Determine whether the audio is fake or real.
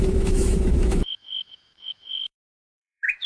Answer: fake